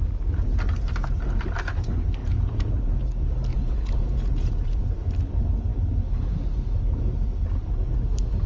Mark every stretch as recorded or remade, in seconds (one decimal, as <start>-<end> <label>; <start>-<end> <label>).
0.0-2.2 recorded; 2.2-2.9 remade; 2.9-3.5 recorded; 3.5-5.1 remade; 5.1-8.5 recorded